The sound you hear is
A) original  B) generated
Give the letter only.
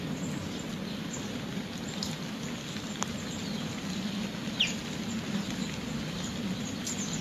A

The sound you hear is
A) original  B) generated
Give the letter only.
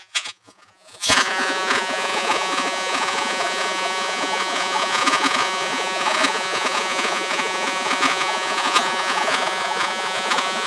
B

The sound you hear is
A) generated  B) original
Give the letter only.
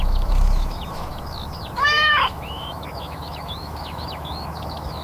A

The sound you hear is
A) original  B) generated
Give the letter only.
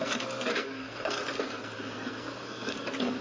B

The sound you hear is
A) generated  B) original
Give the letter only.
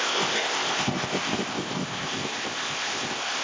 A